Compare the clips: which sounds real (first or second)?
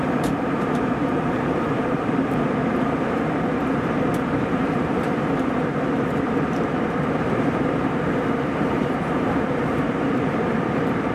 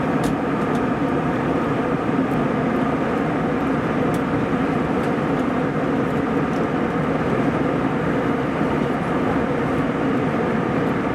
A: second